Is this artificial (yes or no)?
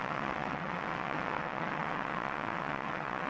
yes